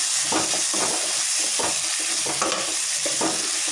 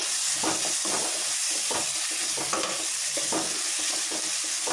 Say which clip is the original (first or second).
first